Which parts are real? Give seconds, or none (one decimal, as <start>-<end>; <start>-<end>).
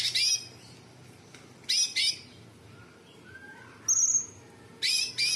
0.0-5.4